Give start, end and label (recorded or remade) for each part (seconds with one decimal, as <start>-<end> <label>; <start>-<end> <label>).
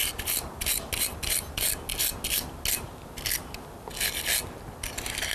0.0-5.3 recorded